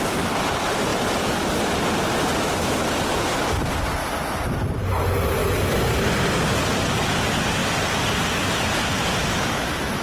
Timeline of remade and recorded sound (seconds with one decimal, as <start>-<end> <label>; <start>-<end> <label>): 0.0-10.0 recorded